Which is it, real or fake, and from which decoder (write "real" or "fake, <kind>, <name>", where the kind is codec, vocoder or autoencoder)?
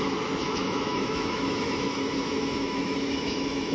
fake, autoencoder, DAC-VAE